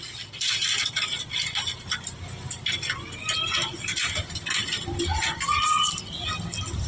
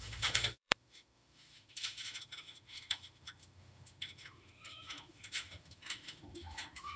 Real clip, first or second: first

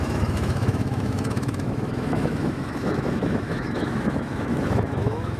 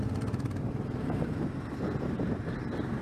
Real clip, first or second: second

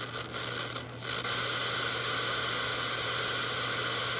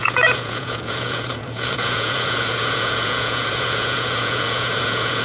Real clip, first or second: first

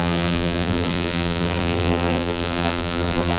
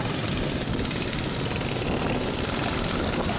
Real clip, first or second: second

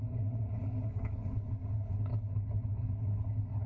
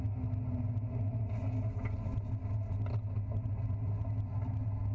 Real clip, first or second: second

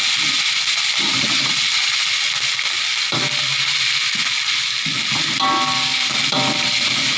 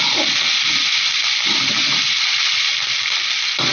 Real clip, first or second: first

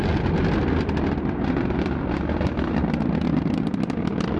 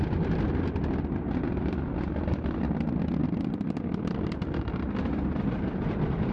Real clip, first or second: first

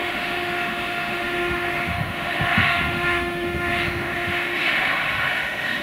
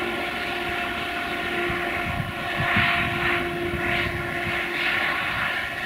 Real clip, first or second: second